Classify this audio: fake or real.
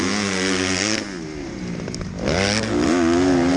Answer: real